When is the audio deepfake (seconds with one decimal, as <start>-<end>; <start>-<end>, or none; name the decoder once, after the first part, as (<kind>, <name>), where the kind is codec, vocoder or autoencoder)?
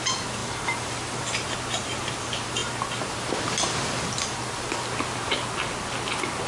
0.4-0.9 (vocoder, BigVGAN v2)